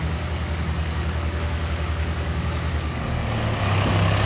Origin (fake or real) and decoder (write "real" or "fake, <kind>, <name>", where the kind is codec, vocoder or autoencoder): fake, codec, DAC